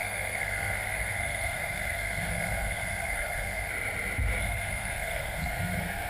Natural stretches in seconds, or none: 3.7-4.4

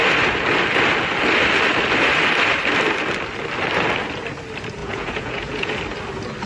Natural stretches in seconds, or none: 0.0-4.8; 5.7-6.5

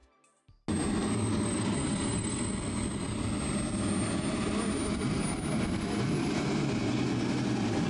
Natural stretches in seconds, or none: 0.0-7.9